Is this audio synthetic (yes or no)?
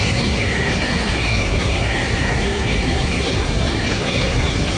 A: yes